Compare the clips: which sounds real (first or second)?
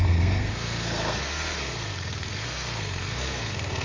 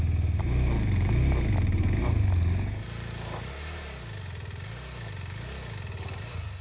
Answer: second